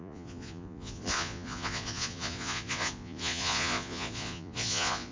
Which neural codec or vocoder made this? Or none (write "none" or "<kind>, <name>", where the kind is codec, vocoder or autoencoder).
vocoder, Vocos